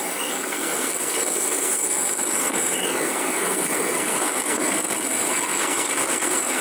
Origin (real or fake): fake